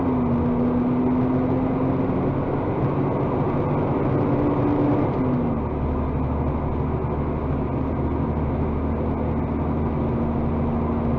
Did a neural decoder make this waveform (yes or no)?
no